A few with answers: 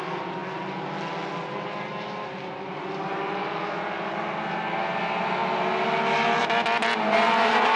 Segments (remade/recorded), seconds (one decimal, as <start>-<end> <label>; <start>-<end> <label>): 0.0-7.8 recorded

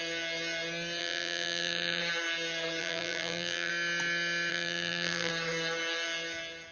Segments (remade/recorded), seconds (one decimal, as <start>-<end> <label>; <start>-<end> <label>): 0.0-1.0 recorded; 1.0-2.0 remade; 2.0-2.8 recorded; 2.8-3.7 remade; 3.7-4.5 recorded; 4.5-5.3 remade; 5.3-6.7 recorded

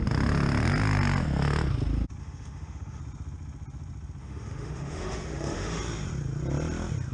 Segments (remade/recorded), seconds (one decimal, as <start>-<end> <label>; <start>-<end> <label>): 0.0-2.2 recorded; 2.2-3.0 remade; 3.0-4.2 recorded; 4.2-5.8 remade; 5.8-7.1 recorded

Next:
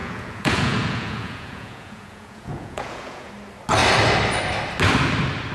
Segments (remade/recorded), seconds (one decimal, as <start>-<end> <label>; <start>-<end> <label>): 0.0-3.3 remade; 3.3-5.5 recorded

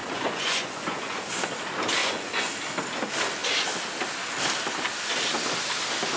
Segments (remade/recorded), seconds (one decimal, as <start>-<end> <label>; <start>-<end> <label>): 0.0-1.2 remade; 1.2-2.0 recorded; 2.0-2.5 remade; 2.5-6.2 recorded